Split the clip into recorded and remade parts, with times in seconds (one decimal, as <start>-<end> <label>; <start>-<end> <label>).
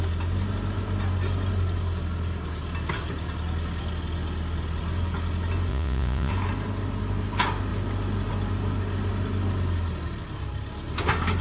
0.0-5.7 recorded; 5.7-6.3 remade; 6.3-11.4 recorded